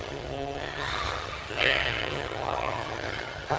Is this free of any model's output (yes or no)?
no